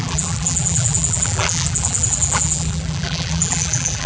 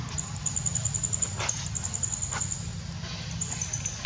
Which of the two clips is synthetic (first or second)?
first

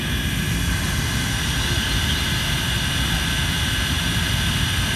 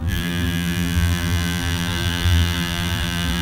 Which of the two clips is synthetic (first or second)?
second